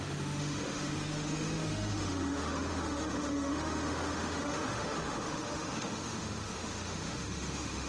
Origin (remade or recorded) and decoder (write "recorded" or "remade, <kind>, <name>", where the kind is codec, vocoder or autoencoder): remade, autoencoder, DAC-VAE